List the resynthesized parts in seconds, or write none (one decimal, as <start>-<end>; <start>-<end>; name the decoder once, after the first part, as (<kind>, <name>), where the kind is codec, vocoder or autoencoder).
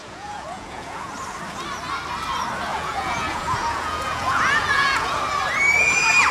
0.0-1.1 (vocoder, Vocos); 2.7-5.2